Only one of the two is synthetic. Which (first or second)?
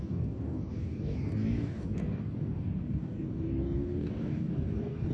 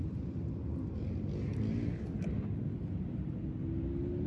first